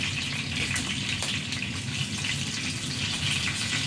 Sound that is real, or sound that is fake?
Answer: real